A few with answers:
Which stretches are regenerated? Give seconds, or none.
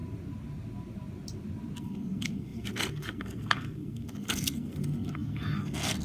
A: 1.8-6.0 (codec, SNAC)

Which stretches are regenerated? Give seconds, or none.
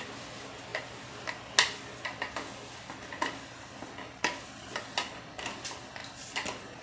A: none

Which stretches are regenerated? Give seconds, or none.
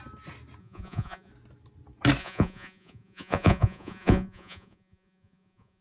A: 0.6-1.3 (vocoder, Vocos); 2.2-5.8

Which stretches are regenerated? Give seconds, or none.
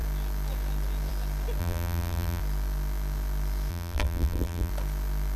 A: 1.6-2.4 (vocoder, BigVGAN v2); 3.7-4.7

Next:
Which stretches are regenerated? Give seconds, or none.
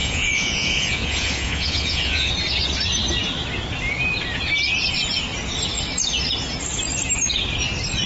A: 0.0-2.3 (vocoder, Vocos)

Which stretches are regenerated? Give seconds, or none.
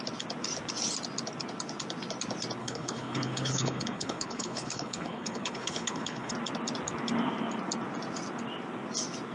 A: 2.6-6.3 (codec, HILCodec)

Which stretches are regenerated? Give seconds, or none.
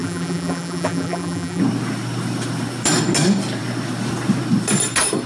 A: 0.0-1.6 (vocoder, BigVGAN v2)